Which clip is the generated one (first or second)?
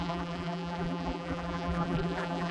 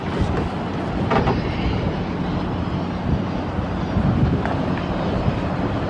first